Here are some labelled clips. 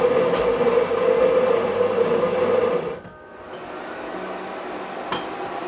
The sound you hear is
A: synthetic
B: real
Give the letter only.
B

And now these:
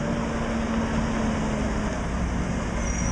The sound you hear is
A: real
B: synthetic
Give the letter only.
A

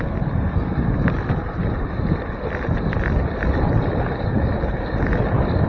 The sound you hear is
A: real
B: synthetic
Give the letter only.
A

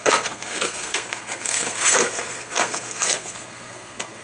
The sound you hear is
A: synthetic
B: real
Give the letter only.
A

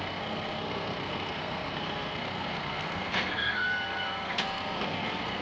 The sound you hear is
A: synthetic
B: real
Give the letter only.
A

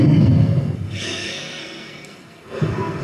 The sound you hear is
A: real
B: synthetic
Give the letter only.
B